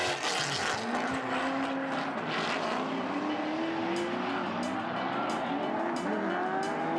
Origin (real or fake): real